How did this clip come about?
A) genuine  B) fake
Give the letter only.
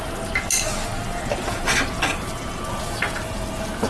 A